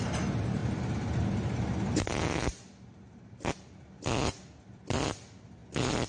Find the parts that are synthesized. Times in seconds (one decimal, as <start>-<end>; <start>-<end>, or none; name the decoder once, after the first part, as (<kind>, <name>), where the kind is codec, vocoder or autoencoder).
none